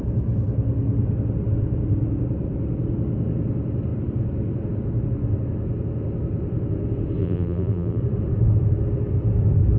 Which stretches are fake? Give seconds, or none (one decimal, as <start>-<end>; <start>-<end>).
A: 7.2-8.0